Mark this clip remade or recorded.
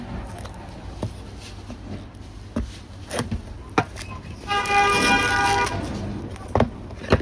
recorded